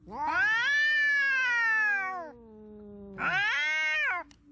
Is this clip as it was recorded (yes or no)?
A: yes